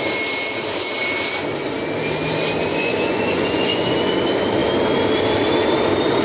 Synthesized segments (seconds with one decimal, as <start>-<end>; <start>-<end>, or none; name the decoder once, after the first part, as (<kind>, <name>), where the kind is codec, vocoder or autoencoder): 2.7-4.1 (vocoder, Vocos)